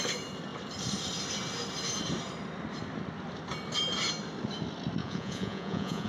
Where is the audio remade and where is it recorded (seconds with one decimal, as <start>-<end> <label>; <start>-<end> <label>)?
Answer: 0.0-5.0 recorded; 5.0-6.1 remade